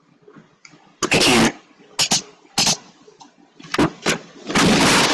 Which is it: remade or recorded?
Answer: recorded